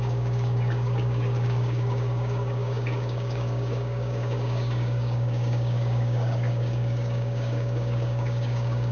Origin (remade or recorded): remade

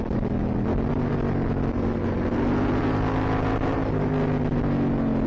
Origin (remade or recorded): recorded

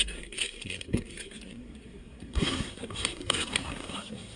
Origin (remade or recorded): remade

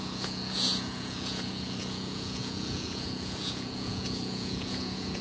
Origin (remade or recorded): remade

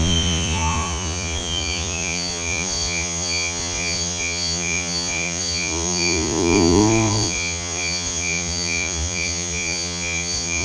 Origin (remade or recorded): remade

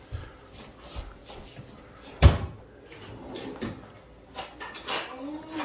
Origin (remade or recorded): recorded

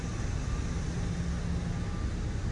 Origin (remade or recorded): recorded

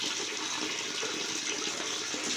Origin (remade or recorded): recorded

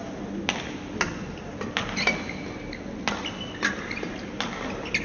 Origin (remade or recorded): recorded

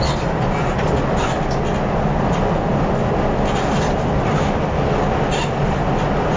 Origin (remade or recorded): recorded